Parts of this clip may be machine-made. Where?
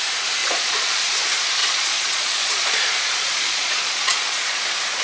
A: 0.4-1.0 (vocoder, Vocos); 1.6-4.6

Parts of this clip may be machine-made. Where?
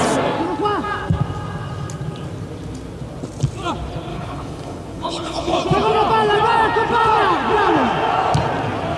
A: 4.1-5.6 (codec, HILCodec)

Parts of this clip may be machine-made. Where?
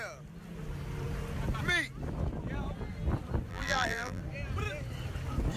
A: 3.5-4.2 (vocoder, BigVGAN v2)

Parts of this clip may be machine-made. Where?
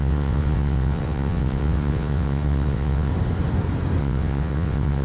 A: 0.0-3.1 (vocoder, WaveNeXt); 4.0-5.0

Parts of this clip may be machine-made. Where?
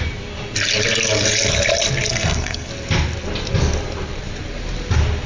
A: 2.1-2.7 (codec, SNAC)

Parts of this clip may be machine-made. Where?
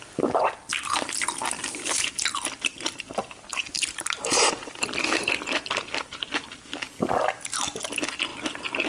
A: 0.0-0.7 (vocoder, BigVGAN v2); 1.2-8.3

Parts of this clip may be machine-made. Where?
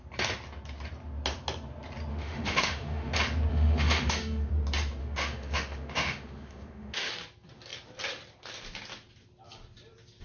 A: 2.1-3.1 (autoencoder, DAC-VAE); 3.5-4.5; 5.0-7.1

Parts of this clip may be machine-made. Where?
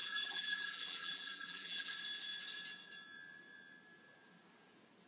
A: 0.0-1.9 (vocoder, BigVGAN v2)